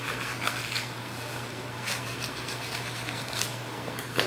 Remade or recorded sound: remade